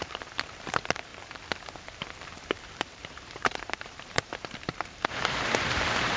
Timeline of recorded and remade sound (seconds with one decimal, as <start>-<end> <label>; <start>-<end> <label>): 0.0-1.1 remade; 1.1-2.4 recorded; 2.4-6.2 remade